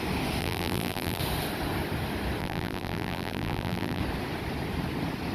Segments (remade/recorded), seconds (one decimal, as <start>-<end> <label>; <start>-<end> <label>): 0.0-0.4 recorded; 0.4-1.2 remade; 1.2-2.4 recorded; 2.4-4.0 remade; 4.0-5.3 recorded